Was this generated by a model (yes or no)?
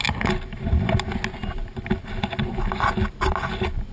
no